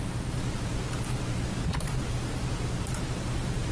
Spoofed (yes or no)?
yes